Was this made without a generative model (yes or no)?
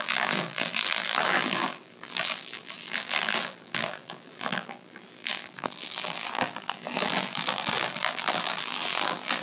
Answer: no